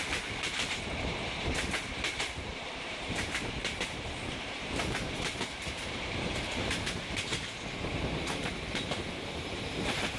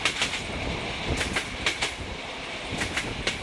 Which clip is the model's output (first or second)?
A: first